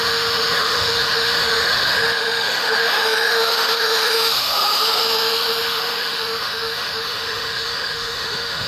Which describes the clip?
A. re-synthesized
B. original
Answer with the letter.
A